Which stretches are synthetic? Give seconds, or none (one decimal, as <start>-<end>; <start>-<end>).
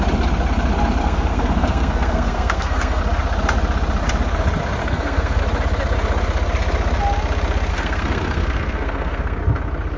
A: 1.0-3.0; 4.8-5.4; 7.7-9.4